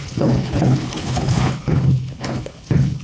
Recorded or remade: remade